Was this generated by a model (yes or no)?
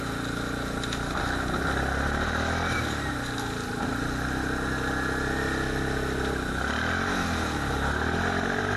no